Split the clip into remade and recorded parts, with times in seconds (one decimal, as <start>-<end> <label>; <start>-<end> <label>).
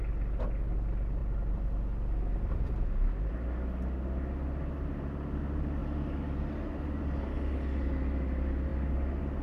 0.0-9.4 recorded